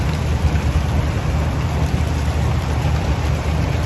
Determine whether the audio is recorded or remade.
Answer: remade